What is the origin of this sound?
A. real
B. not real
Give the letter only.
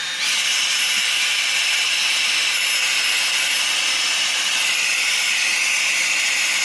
A